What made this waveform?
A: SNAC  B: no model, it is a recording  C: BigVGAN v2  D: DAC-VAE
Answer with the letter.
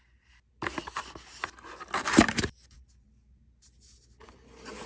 B